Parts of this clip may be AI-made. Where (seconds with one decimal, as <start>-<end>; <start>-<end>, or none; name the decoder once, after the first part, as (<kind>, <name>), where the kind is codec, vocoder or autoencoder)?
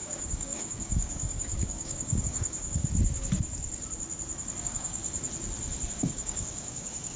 0.0-2.8 (codec, DAC); 4.6-5.0; 5.9-7.2